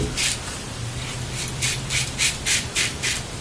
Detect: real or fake fake